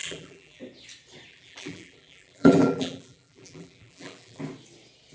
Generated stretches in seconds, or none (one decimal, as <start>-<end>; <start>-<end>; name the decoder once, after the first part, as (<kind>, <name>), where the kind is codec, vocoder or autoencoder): 0.0-0.6 (vocoder, BigVGAN v2); 1.3-4.4